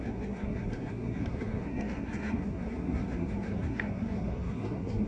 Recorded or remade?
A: remade